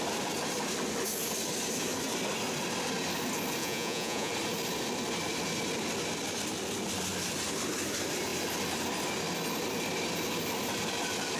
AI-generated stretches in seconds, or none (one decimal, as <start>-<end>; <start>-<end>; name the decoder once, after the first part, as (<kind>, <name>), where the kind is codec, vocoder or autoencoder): 3.6-4.3 (vocoder, Vocos)